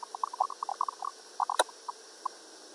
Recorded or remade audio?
recorded